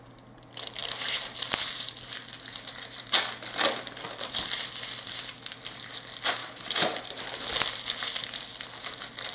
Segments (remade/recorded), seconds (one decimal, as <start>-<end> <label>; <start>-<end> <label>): 0.0-0.8 recorded; 0.8-2.0 remade; 2.0-6.4 recorded; 6.4-7.2 remade; 7.2-9.3 recorded